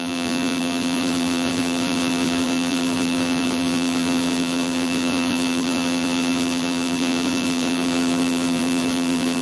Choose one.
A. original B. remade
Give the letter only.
B